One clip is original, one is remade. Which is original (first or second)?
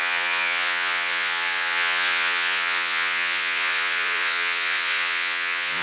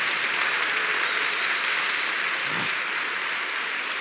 second